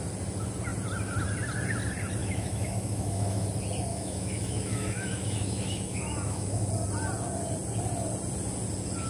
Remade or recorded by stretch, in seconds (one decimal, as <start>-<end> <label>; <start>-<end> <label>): 0.0-2.2 recorded; 2.2-3.4 remade; 3.4-3.9 recorded; 3.9-6.7 remade; 6.7-9.1 recorded